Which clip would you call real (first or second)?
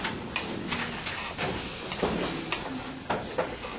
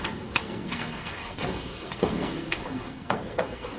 first